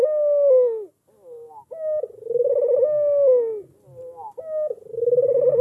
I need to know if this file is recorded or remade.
recorded